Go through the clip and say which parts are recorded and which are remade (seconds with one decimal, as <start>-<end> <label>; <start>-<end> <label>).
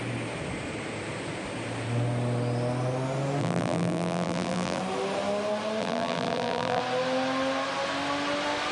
0.0-3.4 recorded; 3.4-4.8 remade; 4.8-5.8 recorded; 5.8-6.8 remade; 6.8-8.7 recorded